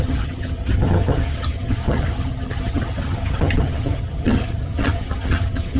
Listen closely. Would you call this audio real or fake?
fake